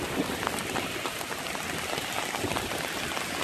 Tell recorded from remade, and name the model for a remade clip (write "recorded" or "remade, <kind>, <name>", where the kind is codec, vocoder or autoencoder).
recorded